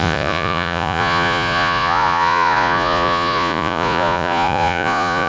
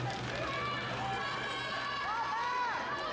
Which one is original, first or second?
second